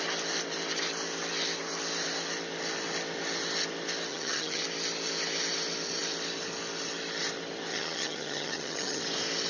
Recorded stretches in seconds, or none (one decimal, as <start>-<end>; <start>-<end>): 0.0-4.1; 4.6-7.7; 9.0-9.5